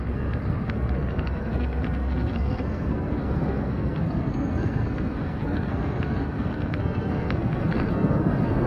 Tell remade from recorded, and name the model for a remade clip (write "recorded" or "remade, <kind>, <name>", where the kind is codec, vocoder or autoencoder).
remade, codec, SNAC